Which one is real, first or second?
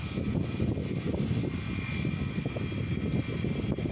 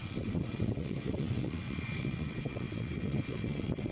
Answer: first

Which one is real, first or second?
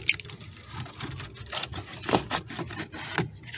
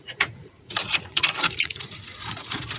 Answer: first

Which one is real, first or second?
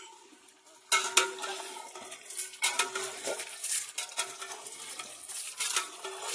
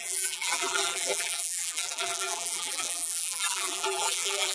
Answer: first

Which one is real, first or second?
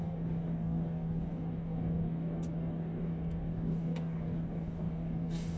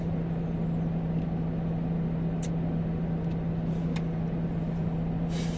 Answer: second